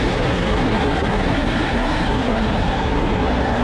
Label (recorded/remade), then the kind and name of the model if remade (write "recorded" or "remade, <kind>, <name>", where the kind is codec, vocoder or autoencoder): remade, codec, SNAC